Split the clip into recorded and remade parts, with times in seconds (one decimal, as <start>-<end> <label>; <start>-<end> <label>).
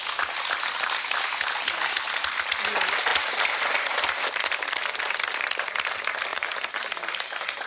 0.0-6.3 recorded; 6.3-7.7 remade